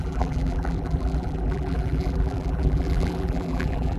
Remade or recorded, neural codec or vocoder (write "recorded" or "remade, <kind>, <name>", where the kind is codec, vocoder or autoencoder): remade, vocoder, BigVGAN v2